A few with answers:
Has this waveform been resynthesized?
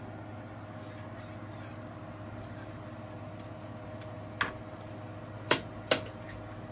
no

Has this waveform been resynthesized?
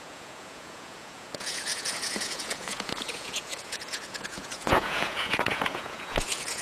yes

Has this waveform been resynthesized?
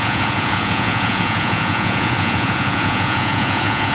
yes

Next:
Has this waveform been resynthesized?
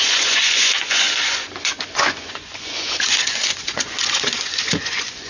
yes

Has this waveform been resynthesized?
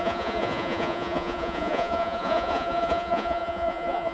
yes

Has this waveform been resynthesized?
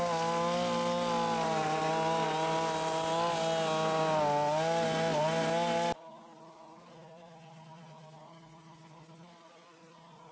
no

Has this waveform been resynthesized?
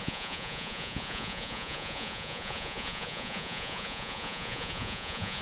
yes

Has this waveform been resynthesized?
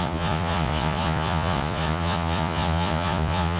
yes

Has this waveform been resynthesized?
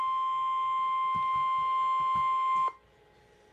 no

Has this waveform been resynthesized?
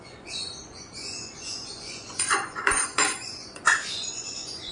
yes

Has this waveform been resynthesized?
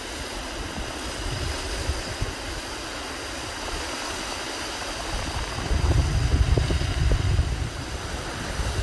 no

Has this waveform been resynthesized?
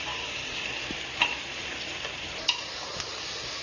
no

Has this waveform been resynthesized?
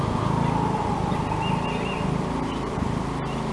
no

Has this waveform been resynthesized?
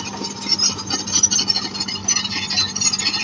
no